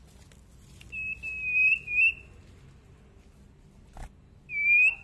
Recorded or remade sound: recorded